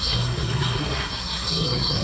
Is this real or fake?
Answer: fake